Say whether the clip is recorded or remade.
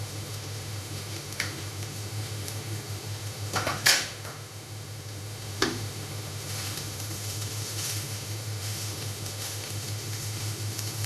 remade